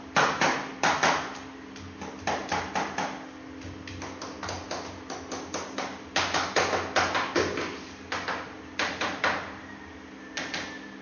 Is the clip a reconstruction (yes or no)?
no